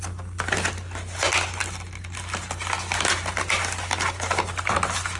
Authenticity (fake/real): real